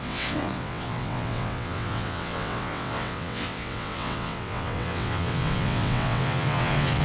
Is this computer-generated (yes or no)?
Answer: yes